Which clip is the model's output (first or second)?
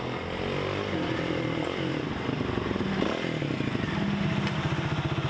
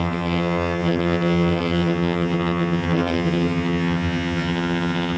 second